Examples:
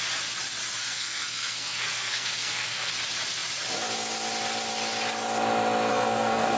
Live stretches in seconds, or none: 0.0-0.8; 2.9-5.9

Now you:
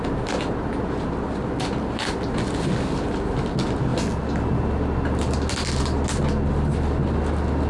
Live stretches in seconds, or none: 0.0-7.7

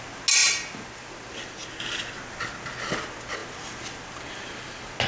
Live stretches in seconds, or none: 0.0-5.1

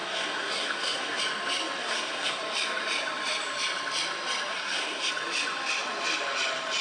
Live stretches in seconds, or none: 1.2-1.8; 2.4-4.5; 5.1-6.8